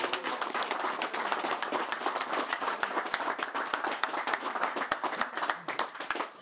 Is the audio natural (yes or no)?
no